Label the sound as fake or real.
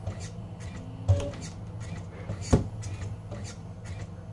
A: real